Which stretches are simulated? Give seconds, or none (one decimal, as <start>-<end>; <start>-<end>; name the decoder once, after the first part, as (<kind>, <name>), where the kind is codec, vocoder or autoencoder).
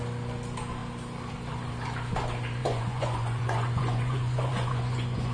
2.6-5.3 (vocoder, Vocos)